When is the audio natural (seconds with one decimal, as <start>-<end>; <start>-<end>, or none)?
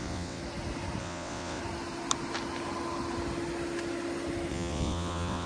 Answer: 0.4-1.0; 1.6-4.5